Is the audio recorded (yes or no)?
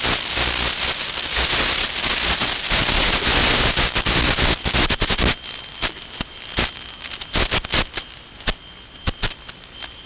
yes